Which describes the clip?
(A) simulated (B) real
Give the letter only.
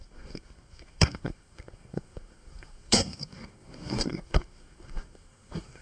A